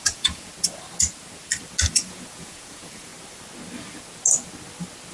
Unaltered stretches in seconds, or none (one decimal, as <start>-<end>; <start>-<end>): 0.5-1.9; 3.1-5.1